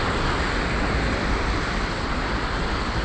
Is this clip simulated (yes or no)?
no